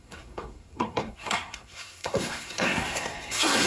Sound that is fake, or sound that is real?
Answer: fake